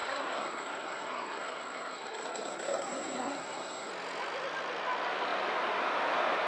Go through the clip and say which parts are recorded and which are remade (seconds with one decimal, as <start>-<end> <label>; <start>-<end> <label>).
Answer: 0.0-3.9 remade; 3.9-6.5 recorded